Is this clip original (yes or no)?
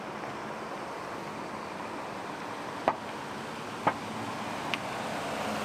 yes